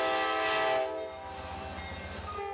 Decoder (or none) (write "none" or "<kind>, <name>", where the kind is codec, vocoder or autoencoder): none